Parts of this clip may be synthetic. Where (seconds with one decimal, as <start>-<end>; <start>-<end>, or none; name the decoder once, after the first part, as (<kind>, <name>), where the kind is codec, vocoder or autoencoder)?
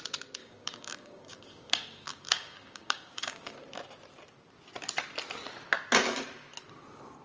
0.4-3.5 (codec, DAC)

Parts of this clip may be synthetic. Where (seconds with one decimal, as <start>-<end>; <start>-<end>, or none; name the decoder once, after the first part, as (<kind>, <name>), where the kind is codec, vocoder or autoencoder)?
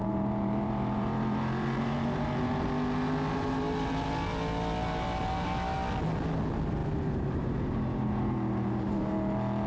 0.0-2.7 (vocoder, BigVGAN v2); 6.8-8.1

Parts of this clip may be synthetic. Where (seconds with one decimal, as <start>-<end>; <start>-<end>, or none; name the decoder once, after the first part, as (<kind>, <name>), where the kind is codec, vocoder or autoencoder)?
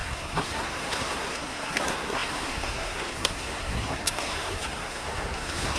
0.0-5.8 (codec, SNAC)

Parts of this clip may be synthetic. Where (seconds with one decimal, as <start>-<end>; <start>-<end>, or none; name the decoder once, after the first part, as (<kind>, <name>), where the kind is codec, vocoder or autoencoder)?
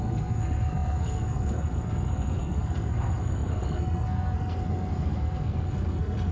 0.0-6.3 (codec, SNAC)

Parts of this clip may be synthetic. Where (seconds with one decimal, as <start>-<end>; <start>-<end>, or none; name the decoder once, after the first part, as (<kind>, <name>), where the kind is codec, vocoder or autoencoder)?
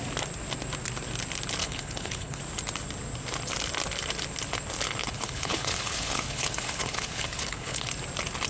1.6-2.4 (codec, HILCodec); 5.0-7.9